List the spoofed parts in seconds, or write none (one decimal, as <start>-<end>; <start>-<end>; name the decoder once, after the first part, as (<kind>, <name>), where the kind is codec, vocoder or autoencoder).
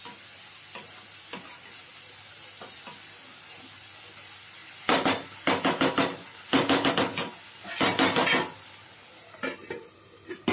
none